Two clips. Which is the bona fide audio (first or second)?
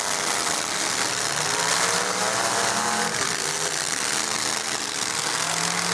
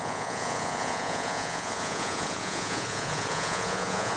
first